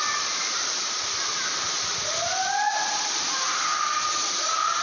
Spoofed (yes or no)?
no